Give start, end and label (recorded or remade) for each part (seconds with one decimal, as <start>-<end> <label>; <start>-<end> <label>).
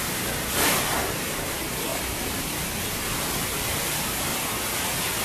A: 0.0-5.2 recorded